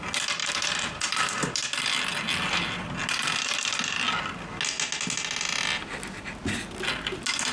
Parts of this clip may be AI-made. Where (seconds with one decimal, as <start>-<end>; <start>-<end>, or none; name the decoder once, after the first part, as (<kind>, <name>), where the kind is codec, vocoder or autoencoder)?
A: 0.4-1.5 (vocoder, BigVGAN v2)